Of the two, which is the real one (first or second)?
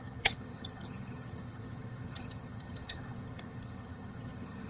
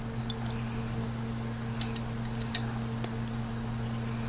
second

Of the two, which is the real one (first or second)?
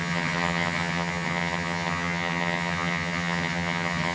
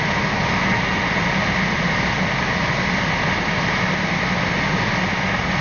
second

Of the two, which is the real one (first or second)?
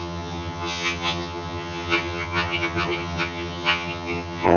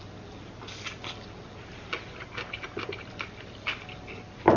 second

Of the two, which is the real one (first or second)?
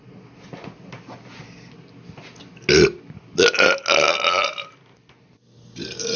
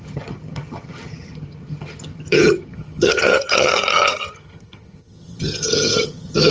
first